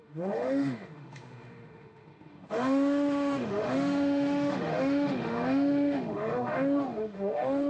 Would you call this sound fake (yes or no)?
yes